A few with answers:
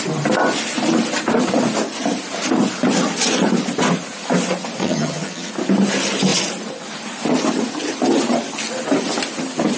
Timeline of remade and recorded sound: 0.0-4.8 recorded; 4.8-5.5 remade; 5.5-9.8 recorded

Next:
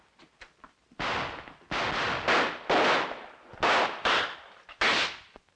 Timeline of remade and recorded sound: 0.0-3.5 recorded; 3.5-4.6 remade; 4.6-5.6 recorded

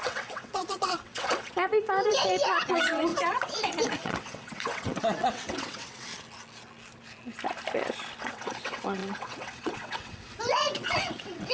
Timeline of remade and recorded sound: 0.0-6.1 remade; 6.1-8.2 recorded; 8.2-11.5 remade